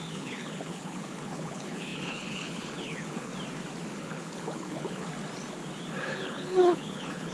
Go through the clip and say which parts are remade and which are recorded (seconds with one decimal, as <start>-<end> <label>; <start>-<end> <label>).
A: 0.0-3.3 remade; 3.3-3.9 recorded; 3.9-5.1 remade; 5.1-6.0 recorded; 6.0-7.3 remade